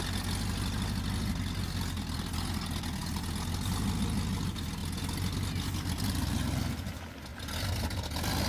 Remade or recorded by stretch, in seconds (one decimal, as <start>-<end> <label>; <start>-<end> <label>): 0.0-8.5 recorded